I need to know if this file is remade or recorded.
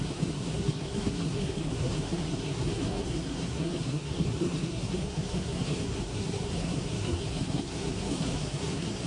remade